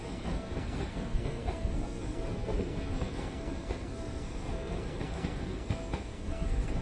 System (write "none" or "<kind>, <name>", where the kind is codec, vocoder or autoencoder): codec, SNAC